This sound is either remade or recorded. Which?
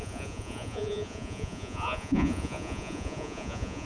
remade